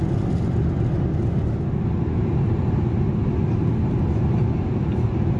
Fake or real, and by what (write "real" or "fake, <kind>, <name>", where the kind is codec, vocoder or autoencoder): real